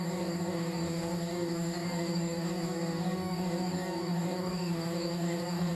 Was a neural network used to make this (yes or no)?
yes